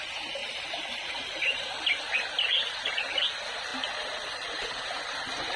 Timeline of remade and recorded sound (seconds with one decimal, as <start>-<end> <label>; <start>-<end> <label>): 0.0-0.4 recorded; 0.4-1.1 remade; 1.1-5.6 recorded